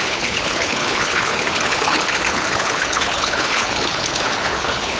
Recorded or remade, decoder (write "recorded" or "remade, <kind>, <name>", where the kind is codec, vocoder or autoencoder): remade, codec, HILCodec